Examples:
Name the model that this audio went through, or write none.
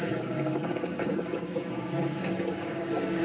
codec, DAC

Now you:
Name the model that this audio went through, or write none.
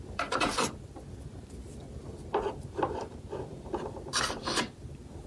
vocoder, BigVGAN v2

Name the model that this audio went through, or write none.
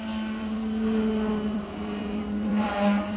vocoder, BigVGAN v2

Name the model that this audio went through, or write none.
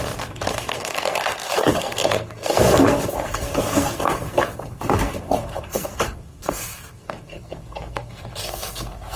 codec, SNAC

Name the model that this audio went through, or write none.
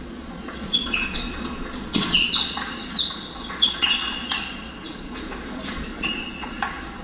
vocoder, Vocos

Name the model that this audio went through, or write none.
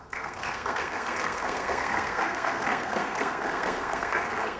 codec, SNAC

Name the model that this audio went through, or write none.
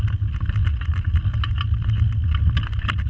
none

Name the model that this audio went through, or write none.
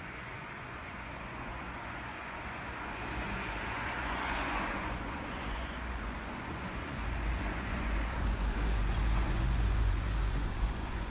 vocoder, Vocos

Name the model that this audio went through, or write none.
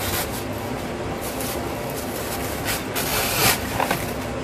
none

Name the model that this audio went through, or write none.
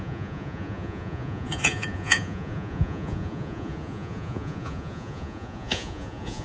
vocoder, Vocos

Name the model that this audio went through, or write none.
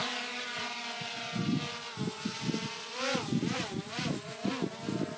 none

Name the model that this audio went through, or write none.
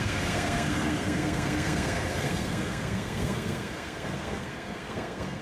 codec, SNAC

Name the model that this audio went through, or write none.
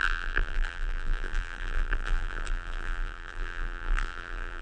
vocoder, BigVGAN v2